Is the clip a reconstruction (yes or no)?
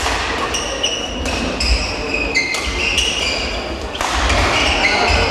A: no